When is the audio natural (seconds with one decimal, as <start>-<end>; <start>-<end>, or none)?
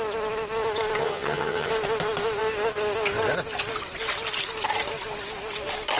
0.0-1.0; 1.7-6.0